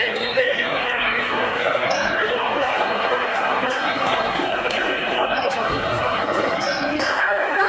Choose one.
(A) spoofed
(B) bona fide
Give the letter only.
A